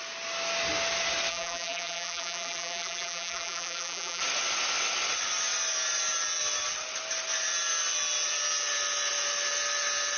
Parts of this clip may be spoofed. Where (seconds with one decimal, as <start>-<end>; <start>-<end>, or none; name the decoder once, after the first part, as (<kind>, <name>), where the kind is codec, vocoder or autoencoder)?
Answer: 1.3-4.2 (vocoder, BigVGAN v2)

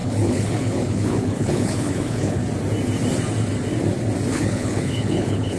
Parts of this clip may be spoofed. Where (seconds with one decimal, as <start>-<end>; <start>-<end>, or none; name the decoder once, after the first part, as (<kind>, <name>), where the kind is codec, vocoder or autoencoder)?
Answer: 0.0-2.4 (codec, HILCodec); 4.3-5.6

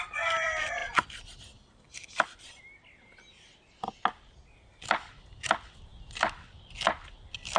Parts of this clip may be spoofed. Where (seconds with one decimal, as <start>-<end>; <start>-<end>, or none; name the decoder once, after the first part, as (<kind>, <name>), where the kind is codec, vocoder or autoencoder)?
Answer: none

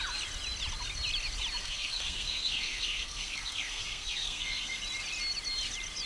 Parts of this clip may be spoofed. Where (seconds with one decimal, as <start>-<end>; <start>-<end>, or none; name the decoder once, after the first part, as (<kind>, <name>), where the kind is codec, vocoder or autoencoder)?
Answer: 1.6-4.8 (codec, SNAC)

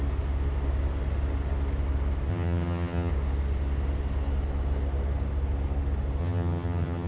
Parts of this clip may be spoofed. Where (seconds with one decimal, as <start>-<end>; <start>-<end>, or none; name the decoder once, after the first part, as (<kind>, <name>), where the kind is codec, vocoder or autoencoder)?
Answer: 2.3-3.1 (vocoder, HiFi-GAN); 6.2-7.1

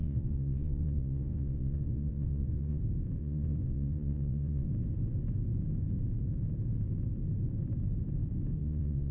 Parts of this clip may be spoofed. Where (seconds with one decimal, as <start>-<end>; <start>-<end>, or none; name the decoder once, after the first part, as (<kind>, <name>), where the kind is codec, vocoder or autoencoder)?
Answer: 0.0-2.8 (vocoder, Vocos); 3.2-4.7; 8.6-9.1

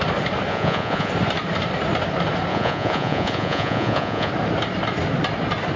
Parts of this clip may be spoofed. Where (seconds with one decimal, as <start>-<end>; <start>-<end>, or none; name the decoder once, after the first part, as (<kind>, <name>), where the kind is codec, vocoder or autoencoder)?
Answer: 0.5-1.1 (vocoder, Vocos); 2.5-4.3